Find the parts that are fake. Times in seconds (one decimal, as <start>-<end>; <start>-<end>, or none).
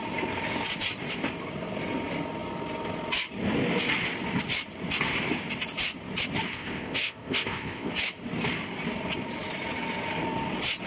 6.5-7.9